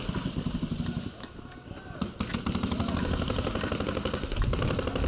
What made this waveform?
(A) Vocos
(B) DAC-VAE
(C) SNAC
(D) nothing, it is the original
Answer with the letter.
D